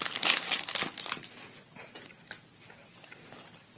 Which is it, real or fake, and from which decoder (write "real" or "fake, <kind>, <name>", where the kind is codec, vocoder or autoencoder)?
fake, vocoder, BigVGAN v2